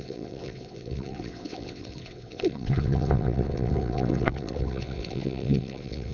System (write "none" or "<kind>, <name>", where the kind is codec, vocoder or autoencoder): vocoder, WaveNeXt